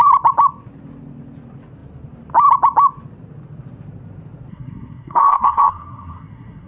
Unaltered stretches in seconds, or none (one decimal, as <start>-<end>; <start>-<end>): 0.0-4.5

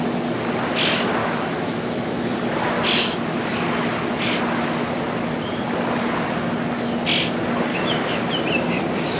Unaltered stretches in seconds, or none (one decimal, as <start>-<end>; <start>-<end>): 0.0-1.2; 2.3-7.7; 8.2-9.2

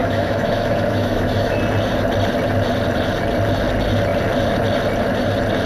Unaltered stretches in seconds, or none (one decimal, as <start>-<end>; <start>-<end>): 1.6-5.7

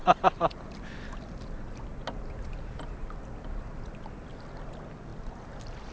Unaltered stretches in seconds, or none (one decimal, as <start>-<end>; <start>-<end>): 0.0-5.9

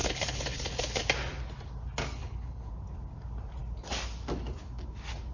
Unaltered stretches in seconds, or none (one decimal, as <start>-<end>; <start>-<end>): 1.0-2.2; 2.7-5.3